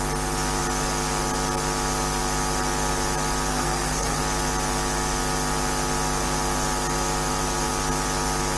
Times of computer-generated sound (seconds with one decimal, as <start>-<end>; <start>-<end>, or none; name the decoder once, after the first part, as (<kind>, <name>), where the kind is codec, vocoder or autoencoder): 3.5-4.2 (codec, SNAC)